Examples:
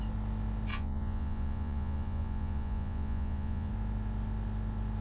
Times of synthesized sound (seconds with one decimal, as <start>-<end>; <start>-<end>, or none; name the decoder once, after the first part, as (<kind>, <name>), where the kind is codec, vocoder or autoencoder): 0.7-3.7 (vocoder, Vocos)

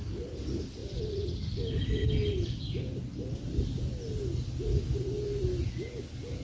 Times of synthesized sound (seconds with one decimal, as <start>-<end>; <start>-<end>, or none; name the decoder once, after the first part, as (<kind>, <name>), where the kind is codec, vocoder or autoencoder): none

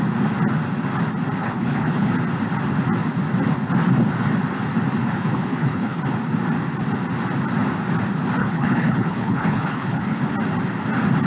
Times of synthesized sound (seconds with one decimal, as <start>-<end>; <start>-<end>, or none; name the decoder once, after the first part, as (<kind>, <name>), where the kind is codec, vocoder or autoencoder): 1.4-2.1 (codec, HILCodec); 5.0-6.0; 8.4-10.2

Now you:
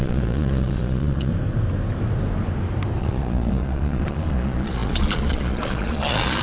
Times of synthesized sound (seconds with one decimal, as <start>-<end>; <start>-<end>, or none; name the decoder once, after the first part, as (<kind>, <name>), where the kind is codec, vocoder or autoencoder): 0.0-1.3 (vocoder, Vocos); 3.0-6.4

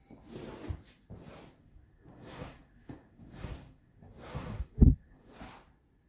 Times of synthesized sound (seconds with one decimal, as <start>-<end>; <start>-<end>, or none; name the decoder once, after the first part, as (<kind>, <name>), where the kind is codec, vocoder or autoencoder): 1.6-5.3 (codec, SNAC)

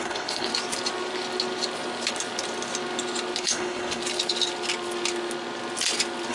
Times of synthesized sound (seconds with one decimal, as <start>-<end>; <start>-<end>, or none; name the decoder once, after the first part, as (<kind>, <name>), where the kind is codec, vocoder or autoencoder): 0.0-0.5 (codec, HILCodec); 3.4-4.0